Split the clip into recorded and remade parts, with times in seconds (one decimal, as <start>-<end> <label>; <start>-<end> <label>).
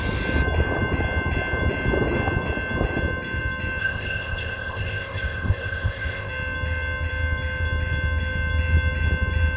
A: 0.0-3.8 recorded; 3.8-6.3 remade; 6.3-9.6 recorded